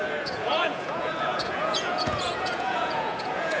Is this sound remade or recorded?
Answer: remade